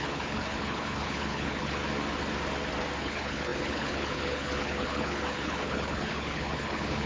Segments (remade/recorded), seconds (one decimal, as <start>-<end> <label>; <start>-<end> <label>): 0.0-1.8 remade; 1.8-3.0 recorded; 3.0-7.1 remade